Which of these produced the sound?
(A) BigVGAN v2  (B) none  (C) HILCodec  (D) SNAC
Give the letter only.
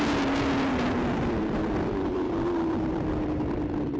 A